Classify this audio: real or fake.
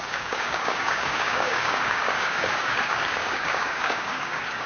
fake